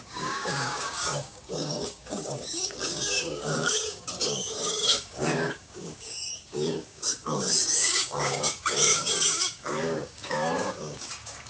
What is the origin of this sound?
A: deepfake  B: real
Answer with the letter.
A